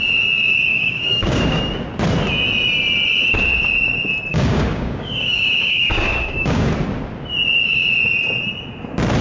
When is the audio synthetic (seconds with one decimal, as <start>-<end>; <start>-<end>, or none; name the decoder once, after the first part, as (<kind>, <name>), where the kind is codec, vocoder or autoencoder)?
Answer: 0.7-1.6 (codec, DAC); 4.3-6.7